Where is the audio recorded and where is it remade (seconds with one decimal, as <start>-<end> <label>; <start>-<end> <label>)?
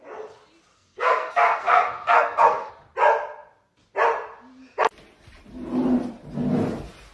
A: 0.0-0.7 recorded; 0.7-2.7 remade; 2.7-7.1 recorded